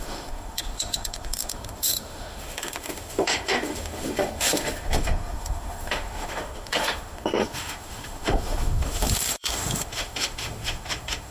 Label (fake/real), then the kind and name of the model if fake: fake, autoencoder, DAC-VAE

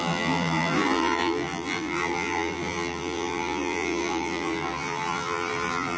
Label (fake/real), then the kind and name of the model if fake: fake, vocoder, BigVGAN v2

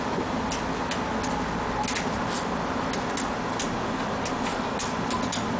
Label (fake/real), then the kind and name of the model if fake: real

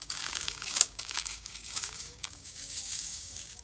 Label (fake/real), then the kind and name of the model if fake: fake, codec, DAC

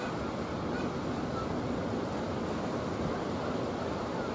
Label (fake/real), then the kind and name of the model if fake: real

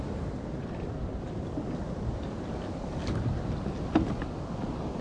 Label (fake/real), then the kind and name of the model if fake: real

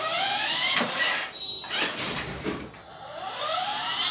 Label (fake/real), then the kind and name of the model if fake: fake, vocoder, BigVGAN v2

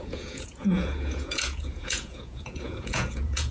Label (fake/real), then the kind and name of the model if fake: fake, vocoder, Vocos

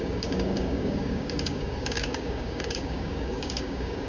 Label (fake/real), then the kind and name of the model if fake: fake, codec, DAC